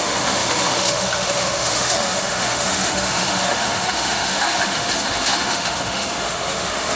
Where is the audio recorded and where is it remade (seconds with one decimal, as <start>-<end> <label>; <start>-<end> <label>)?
0.0-7.0 remade